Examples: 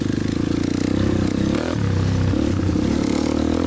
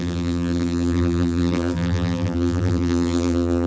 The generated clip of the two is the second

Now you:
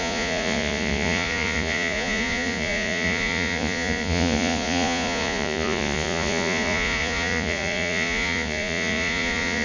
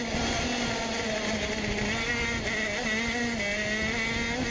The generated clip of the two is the first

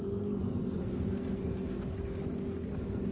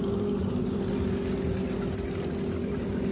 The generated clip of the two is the first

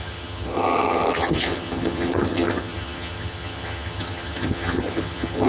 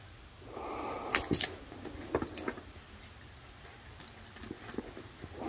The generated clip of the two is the first